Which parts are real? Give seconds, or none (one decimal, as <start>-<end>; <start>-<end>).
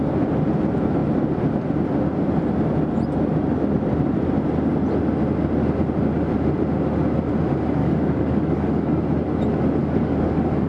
0.0-7.8; 9.0-9.8